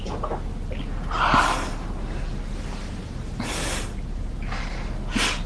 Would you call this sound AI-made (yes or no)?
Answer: no